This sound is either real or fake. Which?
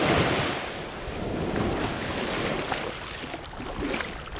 real